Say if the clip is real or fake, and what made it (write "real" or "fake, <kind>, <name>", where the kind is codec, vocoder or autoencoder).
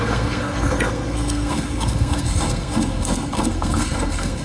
fake, codec, SNAC